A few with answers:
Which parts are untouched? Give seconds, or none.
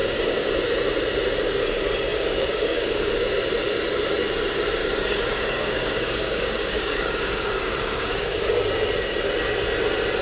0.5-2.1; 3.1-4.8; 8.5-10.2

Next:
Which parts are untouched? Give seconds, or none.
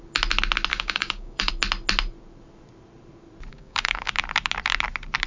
0.0-0.7; 1.5-3.5; 4.1-5.3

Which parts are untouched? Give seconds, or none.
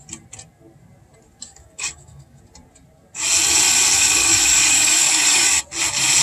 0.0-1.5; 2.4-4.2; 5.6-6.2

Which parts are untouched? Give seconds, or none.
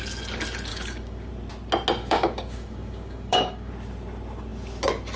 0.0-0.7; 1.3-2.0; 3.7-5.2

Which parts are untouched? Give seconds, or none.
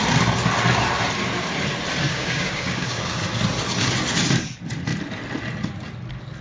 0.0-2.1; 3.2-6.4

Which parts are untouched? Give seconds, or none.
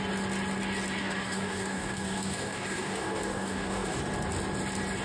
0.0-1.0; 4.0-5.0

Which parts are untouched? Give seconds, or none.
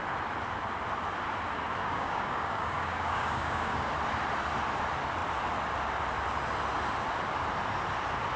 0.0-1.8; 3.9-8.4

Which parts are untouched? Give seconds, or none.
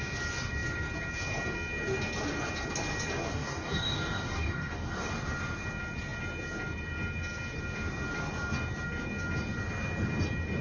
0.0-3.3; 5.1-10.6